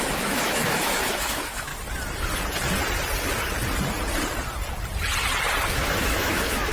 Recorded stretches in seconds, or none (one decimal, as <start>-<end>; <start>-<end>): 1.7-5.7